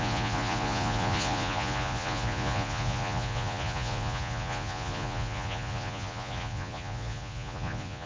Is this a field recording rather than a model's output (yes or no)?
no